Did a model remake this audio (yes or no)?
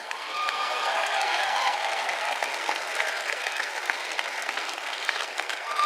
yes